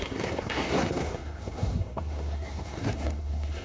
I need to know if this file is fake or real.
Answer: fake